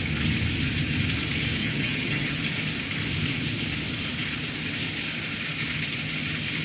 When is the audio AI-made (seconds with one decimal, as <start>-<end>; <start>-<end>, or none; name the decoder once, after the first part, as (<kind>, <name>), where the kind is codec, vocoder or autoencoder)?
1.6-2.4 (vocoder, HiFi-GAN)